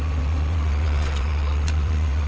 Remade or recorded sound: remade